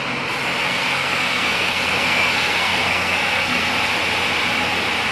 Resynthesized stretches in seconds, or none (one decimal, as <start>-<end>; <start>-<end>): 0.6-3.7